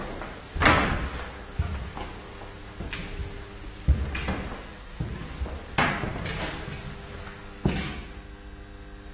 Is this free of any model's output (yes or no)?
yes